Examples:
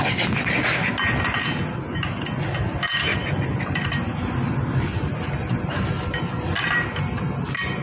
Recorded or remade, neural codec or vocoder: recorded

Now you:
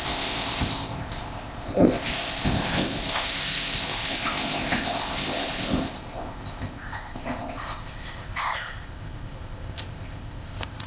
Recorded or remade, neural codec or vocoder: remade, codec, ZipCodec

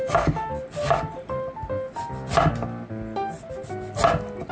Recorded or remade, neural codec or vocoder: recorded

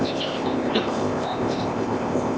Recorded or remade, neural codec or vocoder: remade, codec, ZipCodec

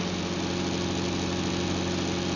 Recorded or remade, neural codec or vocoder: recorded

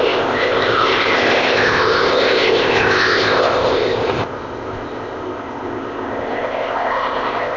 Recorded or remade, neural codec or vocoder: remade, codec, ZipCodec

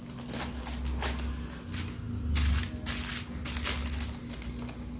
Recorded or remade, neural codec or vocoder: recorded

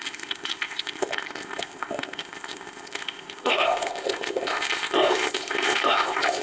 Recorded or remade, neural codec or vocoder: remade, codec, ZipCodec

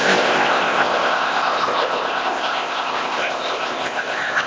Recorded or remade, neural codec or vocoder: remade, codec, ZipCodec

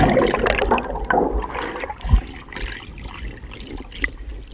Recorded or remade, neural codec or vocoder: recorded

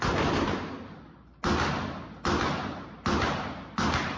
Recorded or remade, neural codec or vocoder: recorded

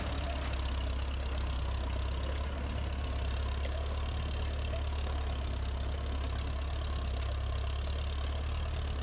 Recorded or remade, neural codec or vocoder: recorded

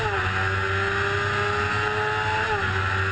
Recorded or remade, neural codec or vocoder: recorded